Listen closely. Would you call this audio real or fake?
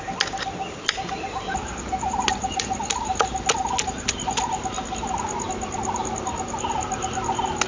real